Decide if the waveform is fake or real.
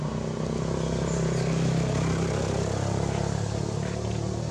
real